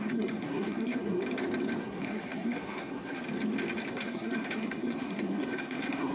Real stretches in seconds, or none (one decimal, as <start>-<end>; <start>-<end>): 1.2-1.8; 3.2-3.9